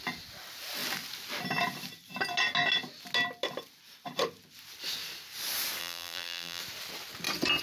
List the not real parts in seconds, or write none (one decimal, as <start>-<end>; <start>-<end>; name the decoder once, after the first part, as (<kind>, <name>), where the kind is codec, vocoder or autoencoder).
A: 5.8-6.6 (vocoder, BigVGAN v2)